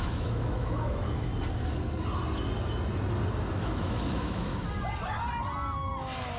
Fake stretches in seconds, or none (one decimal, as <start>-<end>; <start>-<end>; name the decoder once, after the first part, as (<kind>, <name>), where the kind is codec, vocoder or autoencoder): 0.0-1.3 (autoencoder, DAC-VAE); 3.5-4.5